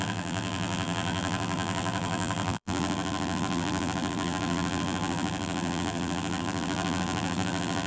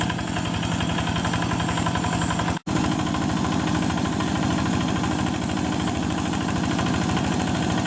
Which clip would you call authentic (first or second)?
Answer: second